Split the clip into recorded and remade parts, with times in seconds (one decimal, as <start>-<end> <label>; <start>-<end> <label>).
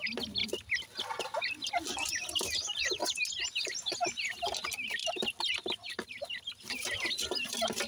0.0-7.9 recorded